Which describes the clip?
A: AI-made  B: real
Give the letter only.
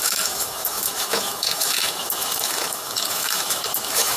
A